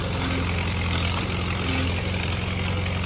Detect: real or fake real